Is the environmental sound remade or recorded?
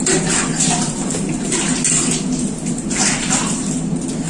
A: recorded